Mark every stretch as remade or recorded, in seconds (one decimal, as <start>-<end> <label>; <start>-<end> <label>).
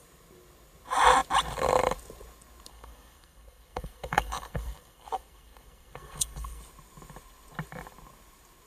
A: 0.0-2.7 recorded; 2.7-6.6 remade; 6.6-8.7 recorded